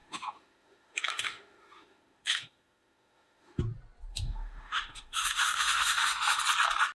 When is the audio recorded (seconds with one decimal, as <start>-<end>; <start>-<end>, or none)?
3.6-4.1; 6.4-7.0